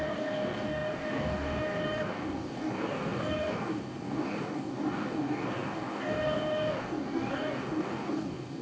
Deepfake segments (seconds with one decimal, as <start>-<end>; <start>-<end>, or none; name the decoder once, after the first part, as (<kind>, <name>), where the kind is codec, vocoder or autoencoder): 0.0-8.6 (codec, DAC)